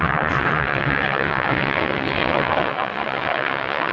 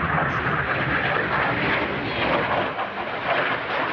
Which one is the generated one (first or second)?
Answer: first